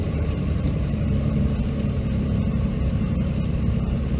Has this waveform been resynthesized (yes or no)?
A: yes